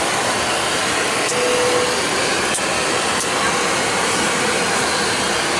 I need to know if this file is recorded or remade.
recorded